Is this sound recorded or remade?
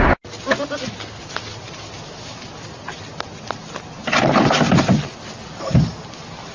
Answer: recorded